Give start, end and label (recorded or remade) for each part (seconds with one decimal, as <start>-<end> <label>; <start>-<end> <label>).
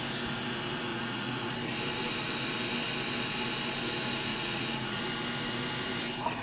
0.0-0.9 recorded; 0.9-1.5 remade; 1.5-4.3 recorded; 4.3-5.0 remade; 5.0-6.4 recorded